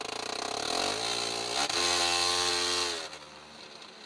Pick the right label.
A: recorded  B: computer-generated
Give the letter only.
A